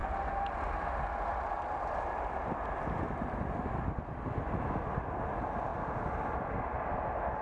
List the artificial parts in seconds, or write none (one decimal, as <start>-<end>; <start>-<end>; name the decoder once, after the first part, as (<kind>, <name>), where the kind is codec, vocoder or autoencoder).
none